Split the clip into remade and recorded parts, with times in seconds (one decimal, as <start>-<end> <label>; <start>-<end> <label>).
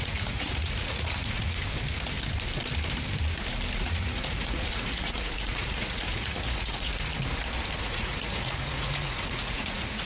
0.0-1.6 remade; 1.6-3.8 recorded; 3.8-7.1 remade; 7.1-7.8 recorded; 7.8-10.1 remade